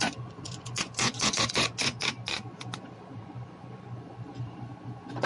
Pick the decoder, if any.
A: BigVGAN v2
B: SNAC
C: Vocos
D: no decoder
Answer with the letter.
C